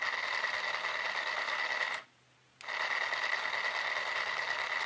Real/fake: real